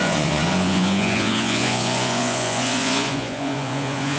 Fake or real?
fake